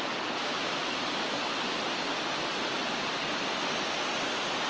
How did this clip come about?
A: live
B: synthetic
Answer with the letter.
A